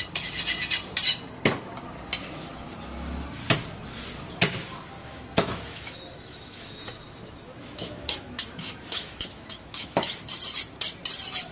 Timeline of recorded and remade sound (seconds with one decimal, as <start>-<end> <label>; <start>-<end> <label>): 0.0-5.0 recorded; 5.0-10.2 remade; 10.2-11.5 recorded